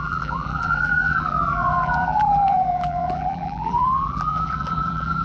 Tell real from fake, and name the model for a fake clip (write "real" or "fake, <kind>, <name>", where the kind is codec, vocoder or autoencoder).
fake, vocoder, BigVGAN v2